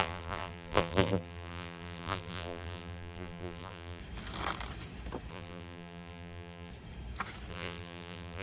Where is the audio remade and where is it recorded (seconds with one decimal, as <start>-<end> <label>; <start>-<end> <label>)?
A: 0.0-4.0 remade; 4.0-5.3 recorded; 5.3-6.7 remade; 6.7-7.5 recorded; 7.5-8.4 remade